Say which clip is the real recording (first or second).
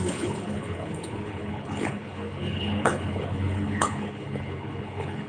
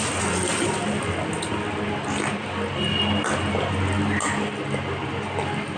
second